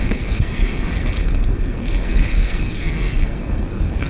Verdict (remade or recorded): remade